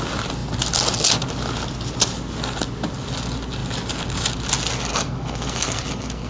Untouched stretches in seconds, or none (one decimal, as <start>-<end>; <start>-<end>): 0.0-4.9